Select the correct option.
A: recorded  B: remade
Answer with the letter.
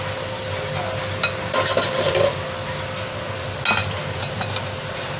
A